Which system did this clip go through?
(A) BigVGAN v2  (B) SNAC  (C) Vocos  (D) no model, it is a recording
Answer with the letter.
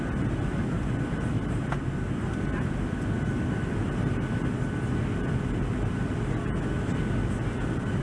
D